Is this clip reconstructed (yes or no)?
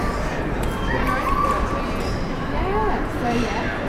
no